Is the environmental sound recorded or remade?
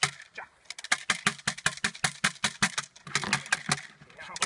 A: recorded